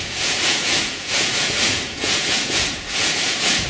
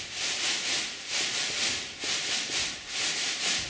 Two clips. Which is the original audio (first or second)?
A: second